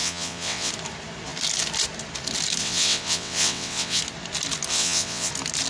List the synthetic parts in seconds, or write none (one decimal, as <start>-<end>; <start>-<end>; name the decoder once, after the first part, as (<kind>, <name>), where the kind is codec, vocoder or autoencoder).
0.0-0.7 (vocoder, WaveNeXt); 2.6-4.0; 4.7-5.3